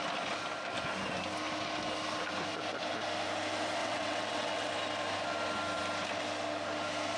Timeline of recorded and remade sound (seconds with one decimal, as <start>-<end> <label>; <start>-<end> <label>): 0.0-3.8 recorded; 3.8-4.7 remade; 4.7-7.2 recorded